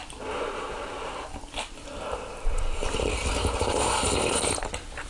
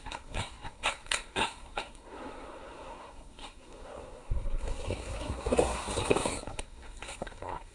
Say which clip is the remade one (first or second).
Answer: second